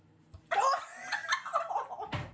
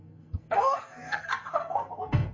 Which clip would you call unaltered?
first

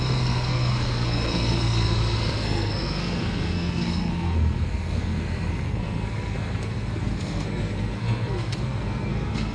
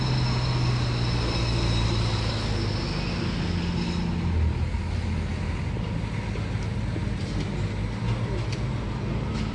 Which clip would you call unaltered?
second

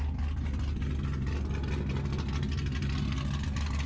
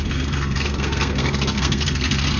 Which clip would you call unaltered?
first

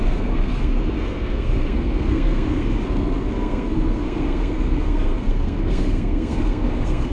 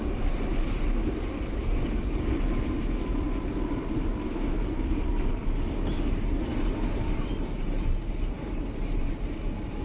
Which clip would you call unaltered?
second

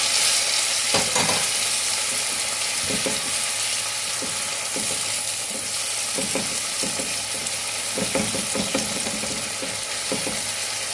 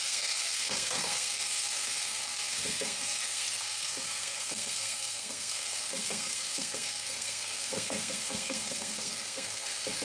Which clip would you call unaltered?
first